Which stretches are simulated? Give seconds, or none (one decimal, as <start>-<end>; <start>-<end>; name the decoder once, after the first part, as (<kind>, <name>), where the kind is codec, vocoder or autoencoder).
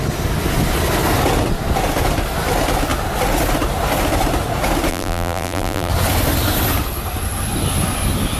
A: 4.9-5.9 (vocoder, BigVGAN v2)